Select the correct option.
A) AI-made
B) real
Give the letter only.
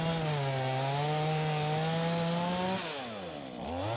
B